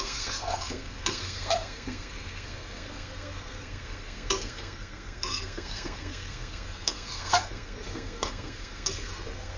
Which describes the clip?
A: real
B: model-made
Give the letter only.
B